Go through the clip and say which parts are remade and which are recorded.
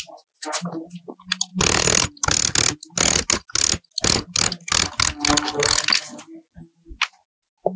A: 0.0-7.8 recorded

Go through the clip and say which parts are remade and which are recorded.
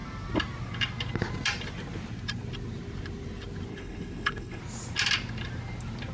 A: 0.0-3.7 recorded; 3.7-4.6 remade; 4.6-6.1 recorded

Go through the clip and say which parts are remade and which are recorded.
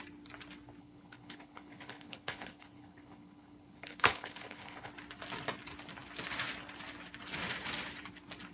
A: 0.0-0.8 recorded; 0.8-4.9 remade; 4.9-8.5 recorded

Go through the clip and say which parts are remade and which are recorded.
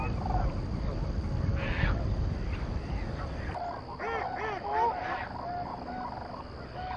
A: 0.0-7.0 recorded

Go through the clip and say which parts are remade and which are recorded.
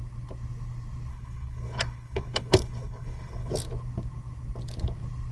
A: 0.0-1.1 recorded; 1.1-3.5 remade; 3.5-5.3 recorded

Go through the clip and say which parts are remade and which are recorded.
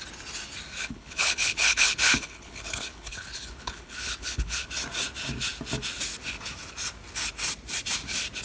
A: 0.0-0.8 recorded; 0.8-4.7 remade; 4.7-8.4 recorded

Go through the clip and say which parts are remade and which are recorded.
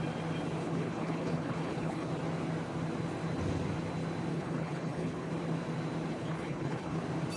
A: 0.0-0.6 recorded; 0.6-2.1 remade; 2.1-4.3 recorded; 4.3-5.3 remade; 5.3-6.1 recorded; 6.1-7.0 remade; 7.0-7.4 recorded